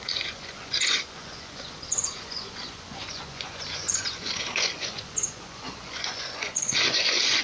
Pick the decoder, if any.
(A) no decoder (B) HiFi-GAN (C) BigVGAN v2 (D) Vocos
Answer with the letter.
D